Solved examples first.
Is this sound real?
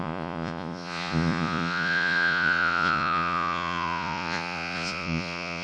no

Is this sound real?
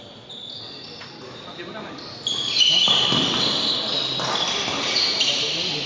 yes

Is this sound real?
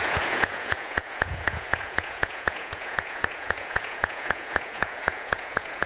no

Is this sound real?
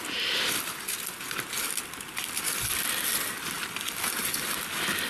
yes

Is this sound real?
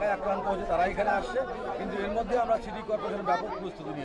yes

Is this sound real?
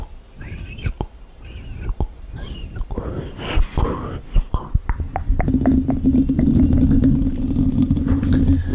yes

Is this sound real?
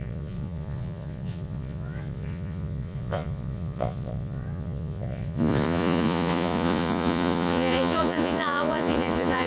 no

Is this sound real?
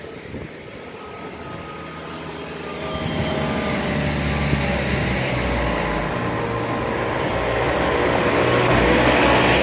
yes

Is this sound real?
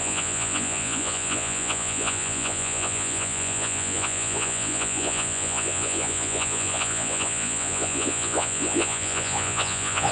no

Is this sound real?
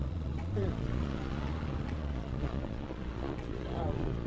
no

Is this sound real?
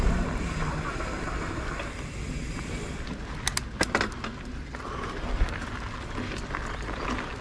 yes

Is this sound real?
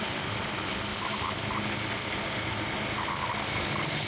yes